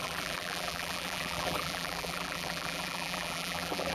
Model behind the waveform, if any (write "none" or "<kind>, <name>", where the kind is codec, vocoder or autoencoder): vocoder, BigVGAN v2